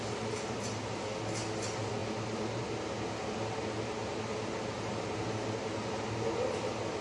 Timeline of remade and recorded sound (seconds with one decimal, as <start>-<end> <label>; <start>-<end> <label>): 0.0-7.0 recorded